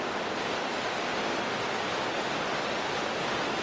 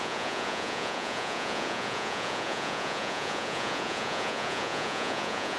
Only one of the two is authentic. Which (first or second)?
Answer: first